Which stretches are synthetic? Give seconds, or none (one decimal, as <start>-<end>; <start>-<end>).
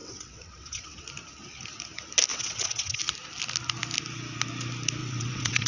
0.0-1.0; 2.3-3.0; 5.0-5.7